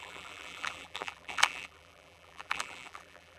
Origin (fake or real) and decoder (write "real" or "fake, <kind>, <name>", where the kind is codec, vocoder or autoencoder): fake, vocoder, BigVGAN v2